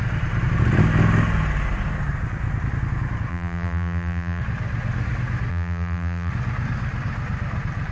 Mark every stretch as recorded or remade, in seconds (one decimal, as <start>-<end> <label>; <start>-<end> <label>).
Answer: 0.0-3.3 recorded; 3.3-4.4 remade; 4.4-5.5 recorded; 5.5-6.3 remade; 6.3-7.9 recorded